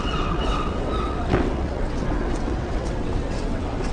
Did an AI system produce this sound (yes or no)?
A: yes